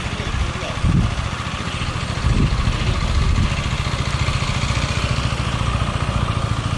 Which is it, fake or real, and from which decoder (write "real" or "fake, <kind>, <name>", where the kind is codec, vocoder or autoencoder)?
real